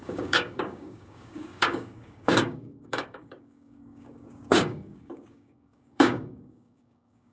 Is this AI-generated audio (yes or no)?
yes